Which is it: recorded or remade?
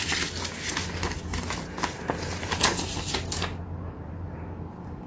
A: recorded